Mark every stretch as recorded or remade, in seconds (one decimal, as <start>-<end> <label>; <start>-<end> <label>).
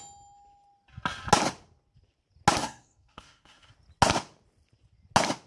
0.0-2.6 recorded; 2.6-3.7 remade; 3.7-5.5 recorded